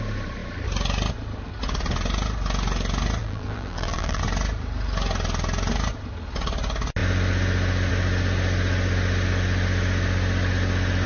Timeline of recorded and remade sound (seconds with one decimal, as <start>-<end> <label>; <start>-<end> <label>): 0.0-3.2 recorded; 3.2-4.2 remade; 4.2-11.1 recorded